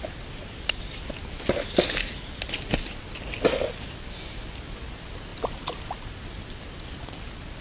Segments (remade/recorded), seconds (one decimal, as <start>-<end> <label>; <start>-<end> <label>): 0.0-7.6 recorded